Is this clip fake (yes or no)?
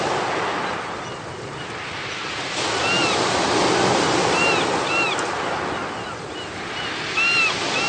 no